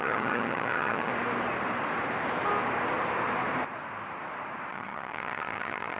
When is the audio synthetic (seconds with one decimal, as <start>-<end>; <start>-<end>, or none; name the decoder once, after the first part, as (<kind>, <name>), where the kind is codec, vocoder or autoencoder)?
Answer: 0.0-1.1 (vocoder, HiFi-GAN); 4.7-6.0